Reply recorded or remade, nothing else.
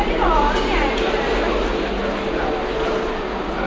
recorded